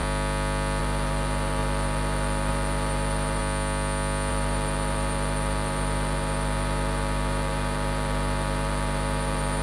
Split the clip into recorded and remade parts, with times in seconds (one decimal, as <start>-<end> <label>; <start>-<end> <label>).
0.0-0.8 recorded; 0.8-3.4 remade; 3.4-4.3 recorded; 4.3-9.6 remade